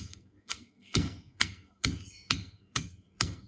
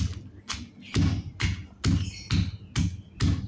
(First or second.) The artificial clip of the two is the first